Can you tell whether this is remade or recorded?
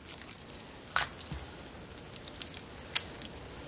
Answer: recorded